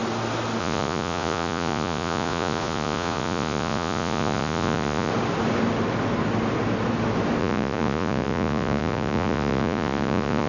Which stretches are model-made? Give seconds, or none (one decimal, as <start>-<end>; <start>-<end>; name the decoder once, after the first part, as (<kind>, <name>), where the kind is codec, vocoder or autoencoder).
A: 0.6-5.1 (vocoder, Vocos); 7.4-10.5